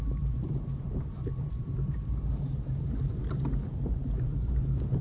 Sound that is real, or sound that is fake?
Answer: fake